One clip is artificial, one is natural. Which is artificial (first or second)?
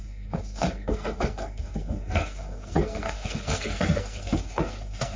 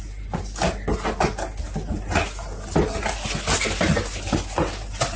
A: first